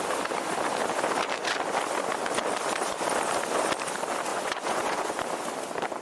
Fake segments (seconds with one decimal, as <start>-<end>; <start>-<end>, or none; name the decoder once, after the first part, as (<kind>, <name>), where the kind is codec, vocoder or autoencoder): 4.3-5.2 (vocoder, Vocos)

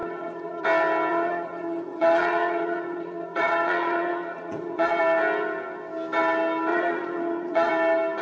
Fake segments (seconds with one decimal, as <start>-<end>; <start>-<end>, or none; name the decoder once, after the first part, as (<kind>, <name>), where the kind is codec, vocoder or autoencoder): 0.0-0.6 (vocoder, Vocos); 1.1-5.0; 6.7-7.7

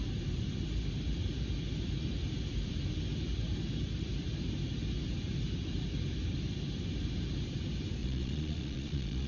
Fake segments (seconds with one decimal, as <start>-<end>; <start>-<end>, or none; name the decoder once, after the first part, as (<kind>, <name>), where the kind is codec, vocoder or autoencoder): 8.0-9.3 (vocoder, Vocos)

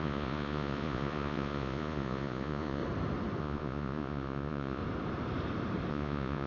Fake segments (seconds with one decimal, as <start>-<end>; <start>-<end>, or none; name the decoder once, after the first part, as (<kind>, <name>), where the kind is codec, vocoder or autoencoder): 0.0-2.8 (vocoder, Vocos); 3.4-4.8; 5.9-6.5

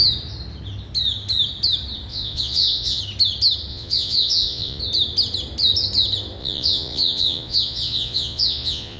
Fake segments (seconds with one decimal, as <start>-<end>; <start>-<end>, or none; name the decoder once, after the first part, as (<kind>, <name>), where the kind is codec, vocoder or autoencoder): 2.1-3.0 (vocoder, Vocos); 3.7-4.8; 6.4-9.0

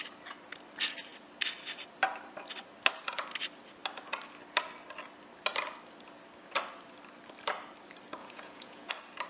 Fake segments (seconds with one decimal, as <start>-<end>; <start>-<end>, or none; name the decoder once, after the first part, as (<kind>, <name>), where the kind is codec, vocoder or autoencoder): 8.2-8.9 (vocoder, Vocos)